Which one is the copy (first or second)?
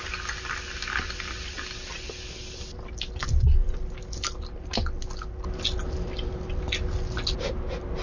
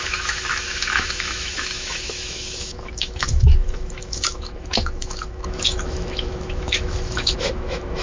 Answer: second